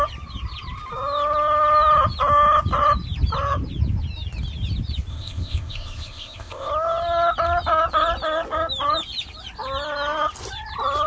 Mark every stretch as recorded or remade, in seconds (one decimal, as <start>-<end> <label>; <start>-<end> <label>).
0.0-5.1 recorded; 5.1-6.7 remade; 6.7-11.1 recorded